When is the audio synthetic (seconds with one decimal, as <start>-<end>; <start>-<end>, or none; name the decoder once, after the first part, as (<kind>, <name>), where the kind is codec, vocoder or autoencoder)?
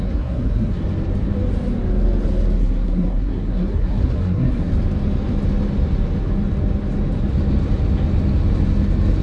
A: 0.0-0.8 (codec, SNAC); 2.6-4.7